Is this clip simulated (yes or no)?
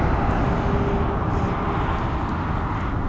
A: no